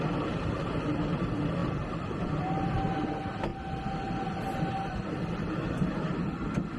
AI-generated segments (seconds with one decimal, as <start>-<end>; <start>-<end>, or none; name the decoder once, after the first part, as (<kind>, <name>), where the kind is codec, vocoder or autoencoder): none